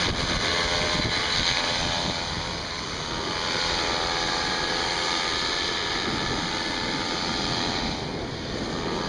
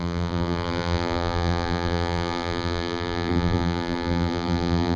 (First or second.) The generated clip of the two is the second